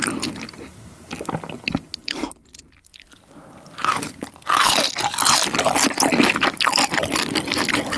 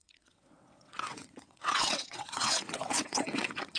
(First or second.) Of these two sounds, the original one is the first